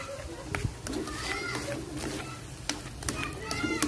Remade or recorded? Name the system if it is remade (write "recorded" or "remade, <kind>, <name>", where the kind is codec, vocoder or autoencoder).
recorded